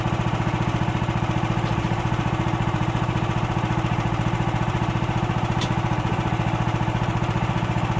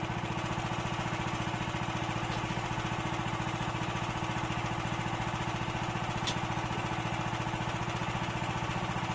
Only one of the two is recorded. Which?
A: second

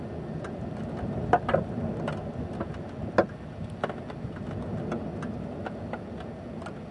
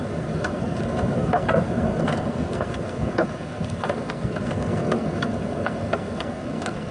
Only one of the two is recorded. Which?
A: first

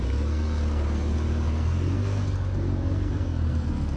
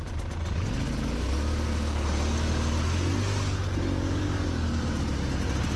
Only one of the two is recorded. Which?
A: second